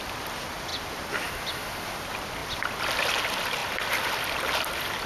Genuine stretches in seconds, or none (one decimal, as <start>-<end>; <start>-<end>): 0.0-5.1